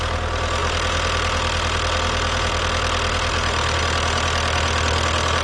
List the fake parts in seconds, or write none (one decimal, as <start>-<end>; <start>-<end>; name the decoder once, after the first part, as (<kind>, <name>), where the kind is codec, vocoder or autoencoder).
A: none